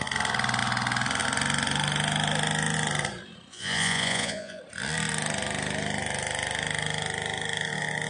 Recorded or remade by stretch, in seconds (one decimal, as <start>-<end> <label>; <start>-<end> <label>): 0.0-3.5 recorded; 3.5-4.6 remade; 4.6-8.1 recorded